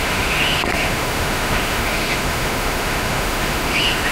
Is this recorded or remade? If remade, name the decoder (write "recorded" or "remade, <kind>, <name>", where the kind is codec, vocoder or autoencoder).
remade, autoencoder, DAC-VAE